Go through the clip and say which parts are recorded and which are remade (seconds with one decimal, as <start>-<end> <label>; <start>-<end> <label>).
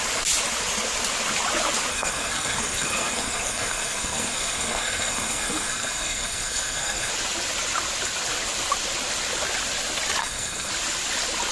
0.0-1.9 recorded; 1.9-7.1 remade; 7.1-10.2 recorded; 10.2-10.7 remade; 10.7-11.5 recorded